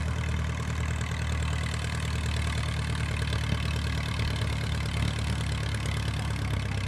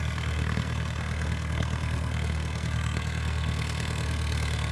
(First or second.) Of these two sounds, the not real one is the second